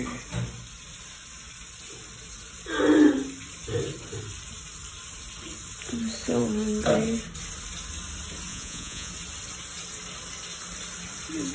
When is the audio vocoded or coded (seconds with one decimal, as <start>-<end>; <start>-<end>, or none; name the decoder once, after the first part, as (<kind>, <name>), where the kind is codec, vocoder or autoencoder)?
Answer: 8.5-9.1 (vocoder, Vocos)